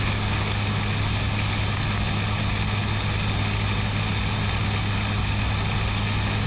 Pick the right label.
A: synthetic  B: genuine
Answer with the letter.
B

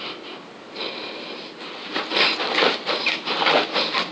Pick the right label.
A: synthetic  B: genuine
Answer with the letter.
A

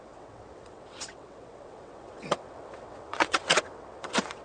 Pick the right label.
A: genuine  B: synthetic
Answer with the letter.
B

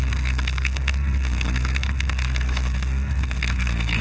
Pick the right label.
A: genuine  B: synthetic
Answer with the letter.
B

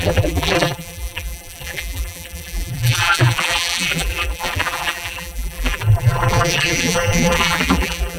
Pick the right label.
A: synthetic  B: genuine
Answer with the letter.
A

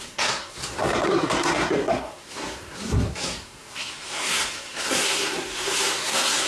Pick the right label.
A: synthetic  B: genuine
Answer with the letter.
A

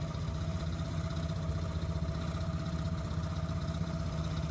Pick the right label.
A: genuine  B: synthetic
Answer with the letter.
A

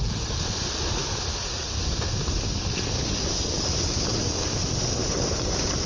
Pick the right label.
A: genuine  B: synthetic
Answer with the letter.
A